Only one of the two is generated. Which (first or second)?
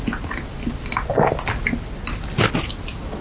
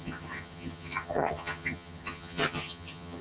second